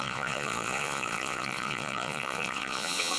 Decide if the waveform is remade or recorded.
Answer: remade